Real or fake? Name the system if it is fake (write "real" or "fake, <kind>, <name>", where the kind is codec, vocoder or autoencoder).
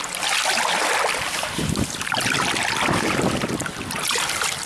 real